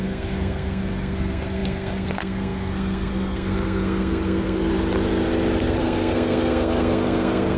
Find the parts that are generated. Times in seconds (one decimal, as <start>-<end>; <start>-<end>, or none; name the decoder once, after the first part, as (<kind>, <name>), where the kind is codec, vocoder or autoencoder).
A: 0.0-4.7 (codec, SNAC); 5.6-7.6